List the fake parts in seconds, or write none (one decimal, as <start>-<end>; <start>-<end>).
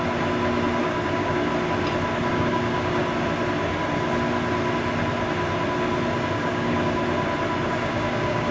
0.8-1.5; 2.3-3.0; 6.3-7.0; 7.7-8.5